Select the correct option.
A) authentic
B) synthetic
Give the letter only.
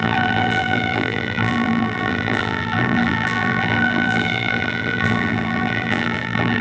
B